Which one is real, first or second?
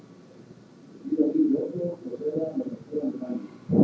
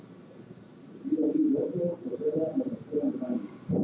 first